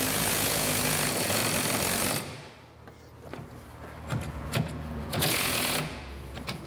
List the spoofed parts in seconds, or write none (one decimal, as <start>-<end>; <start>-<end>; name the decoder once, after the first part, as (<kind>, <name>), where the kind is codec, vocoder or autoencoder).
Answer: 0.0-1.4 (vocoder, Vocos); 4.3-6.7